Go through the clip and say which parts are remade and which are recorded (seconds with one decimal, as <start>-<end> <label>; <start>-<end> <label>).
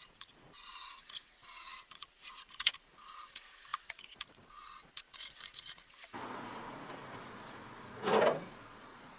0.0-9.2 remade